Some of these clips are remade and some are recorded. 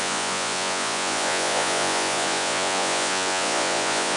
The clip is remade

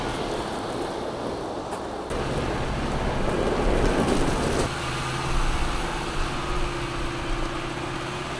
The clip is recorded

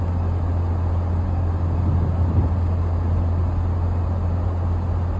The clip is recorded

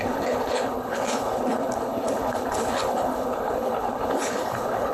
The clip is remade